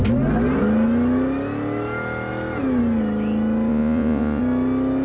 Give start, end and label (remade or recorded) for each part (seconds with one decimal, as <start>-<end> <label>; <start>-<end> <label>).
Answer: 0.0-3.7 recorded; 3.7-4.4 remade; 4.4-5.0 recorded

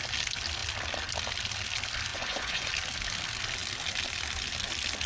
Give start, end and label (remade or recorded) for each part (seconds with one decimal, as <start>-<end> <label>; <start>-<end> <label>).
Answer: 0.0-2.1 recorded; 2.1-2.7 remade; 2.7-5.1 recorded